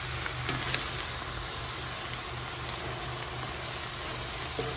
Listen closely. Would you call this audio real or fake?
real